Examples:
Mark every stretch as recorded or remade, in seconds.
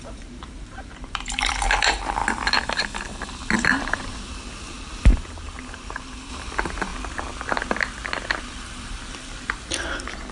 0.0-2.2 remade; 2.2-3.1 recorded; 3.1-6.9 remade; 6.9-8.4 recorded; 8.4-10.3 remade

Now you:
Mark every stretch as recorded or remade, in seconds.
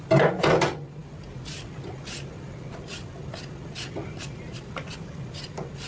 0.0-5.9 recorded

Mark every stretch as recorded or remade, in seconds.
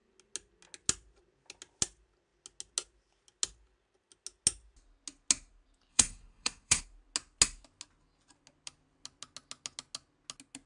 0.0-5.9 recorded; 5.9-6.8 remade; 6.8-10.7 recorded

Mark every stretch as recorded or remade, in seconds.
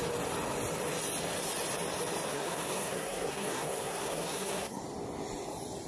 0.0-2.3 recorded; 2.3-4.8 remade; 4.8-5.9 recorded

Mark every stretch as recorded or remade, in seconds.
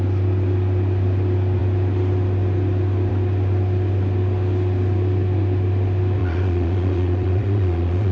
0.0-6.2 recorded; 6.2-8.1 remade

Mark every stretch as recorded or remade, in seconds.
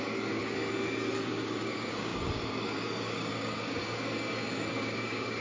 0.0-0.4 remade; 0.4-1.3 recorded; 1.3-5.4 remade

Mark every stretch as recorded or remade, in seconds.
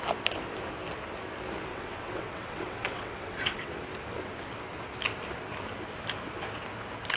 0.0-1.7 recorded; 1.7-3.7 remade; 3.7-7.2 recorded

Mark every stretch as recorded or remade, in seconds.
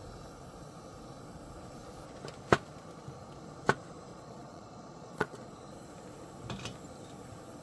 0.0-4.1 recorded; 4.1-5.5 remade; 5.5-7.6 recorded